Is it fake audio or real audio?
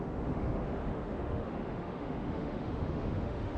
fake